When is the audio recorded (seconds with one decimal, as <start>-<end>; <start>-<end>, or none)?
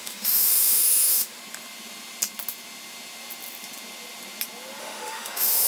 1.4-4.8